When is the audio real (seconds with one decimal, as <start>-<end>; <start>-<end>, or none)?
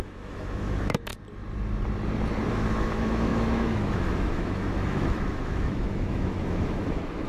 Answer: 1.1-2.5